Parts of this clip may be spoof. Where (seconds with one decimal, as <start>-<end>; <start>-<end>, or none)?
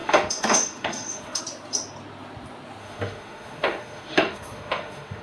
0.0-1.4; 2.8-5.2